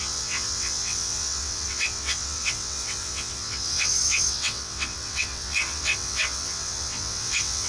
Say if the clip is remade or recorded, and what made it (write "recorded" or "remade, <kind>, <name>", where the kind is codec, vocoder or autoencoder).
remade, vocoder, WaveNeXt